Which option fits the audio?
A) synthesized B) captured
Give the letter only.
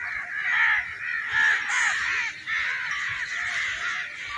B